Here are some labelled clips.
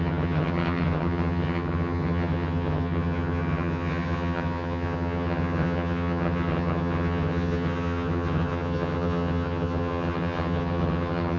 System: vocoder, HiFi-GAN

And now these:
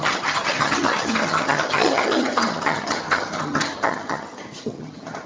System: vocoder, HiFi-GAN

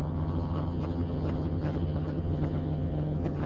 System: vocoder, HiFi-GAN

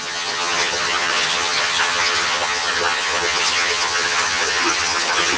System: vocoder, HiFi-GAN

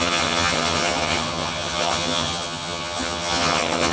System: vocoder, HiFi-GAN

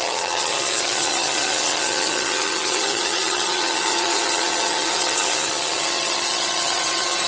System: vocoder, HiFi-GAN